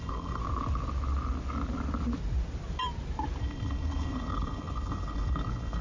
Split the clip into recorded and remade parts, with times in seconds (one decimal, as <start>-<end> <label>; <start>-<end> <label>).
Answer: 0.0-0.4 remade; 0.4-3.4 recorded; 3.4-5.8 remade